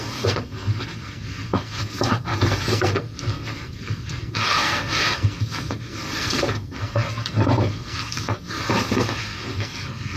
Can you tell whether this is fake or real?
fake